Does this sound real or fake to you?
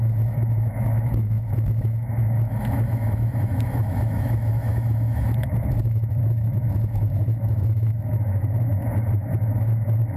fake